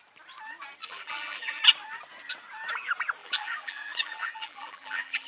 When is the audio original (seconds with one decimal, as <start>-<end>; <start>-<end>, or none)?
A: 0.0-0.8; 1.6-3.2